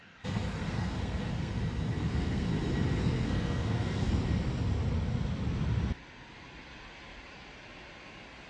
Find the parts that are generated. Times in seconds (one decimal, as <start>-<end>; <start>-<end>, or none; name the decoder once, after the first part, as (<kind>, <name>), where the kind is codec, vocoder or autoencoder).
0.0-1.5 (codec, SNAC); 2.0-2.5; 3.0-4.1